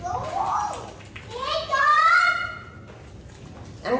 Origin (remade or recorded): recorded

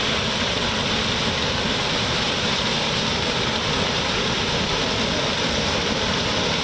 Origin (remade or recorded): remade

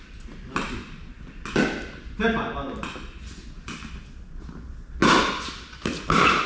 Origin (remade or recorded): recorded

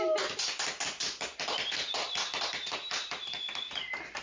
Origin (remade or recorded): recorded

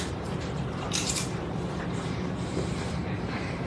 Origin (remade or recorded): remade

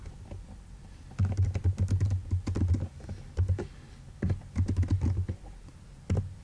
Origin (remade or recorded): recorded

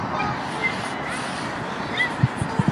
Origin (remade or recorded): recorded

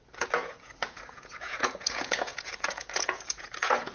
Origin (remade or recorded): remade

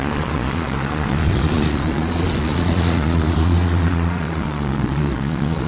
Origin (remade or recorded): remade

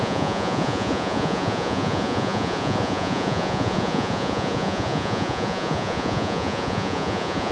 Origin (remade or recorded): remade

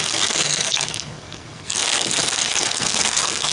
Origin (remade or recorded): remade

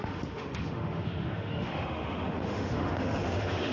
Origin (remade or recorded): remade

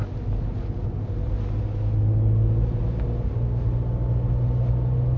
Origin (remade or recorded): recorded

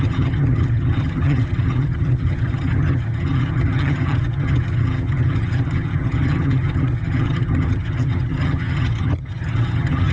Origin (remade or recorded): remade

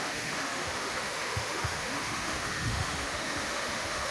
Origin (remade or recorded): remade